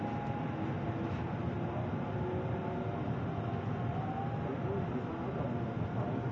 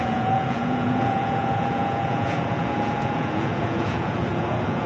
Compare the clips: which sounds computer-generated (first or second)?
second